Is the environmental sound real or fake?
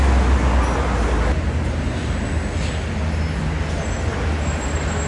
real